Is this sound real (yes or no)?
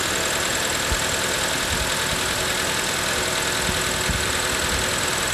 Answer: yes